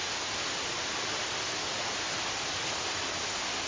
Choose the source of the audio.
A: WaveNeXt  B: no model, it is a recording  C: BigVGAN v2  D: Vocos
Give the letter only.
B